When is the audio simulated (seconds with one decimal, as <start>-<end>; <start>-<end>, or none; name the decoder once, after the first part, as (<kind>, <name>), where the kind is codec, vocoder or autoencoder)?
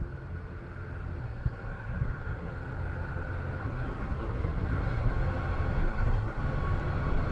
1.2-2.5 (codec, SNAC); 3.6-5.1; 5.8-6.4